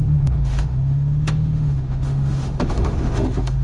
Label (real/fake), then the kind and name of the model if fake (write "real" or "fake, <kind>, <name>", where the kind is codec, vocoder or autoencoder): fake, autoencoder, DAC-VAE